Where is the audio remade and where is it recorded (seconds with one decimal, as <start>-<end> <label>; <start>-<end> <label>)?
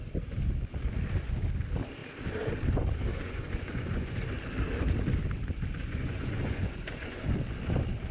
0.0-3.1 recorded; 3.1-4.2 remade; 4.2-5.8 recorded; 5.8-7.3 remade; 7.3-8.1 recorded